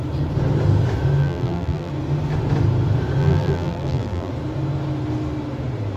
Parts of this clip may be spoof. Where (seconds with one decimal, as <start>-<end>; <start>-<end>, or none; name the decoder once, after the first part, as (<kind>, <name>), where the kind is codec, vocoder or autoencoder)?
1.2-1.9 (vocoder, BigVGAN v2); 3.2-4.3

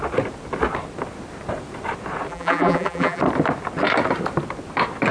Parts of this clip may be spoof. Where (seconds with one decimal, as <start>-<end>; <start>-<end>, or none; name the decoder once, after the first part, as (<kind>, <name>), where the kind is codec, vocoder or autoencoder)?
2.3-3.2 (vocoder, BigVGAN v2)